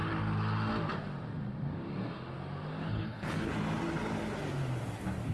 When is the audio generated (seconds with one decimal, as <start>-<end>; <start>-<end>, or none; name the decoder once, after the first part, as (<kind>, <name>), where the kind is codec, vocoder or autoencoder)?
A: 2.8-3.5 (codec, HILCodec)